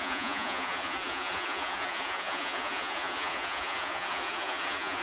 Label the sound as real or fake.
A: fake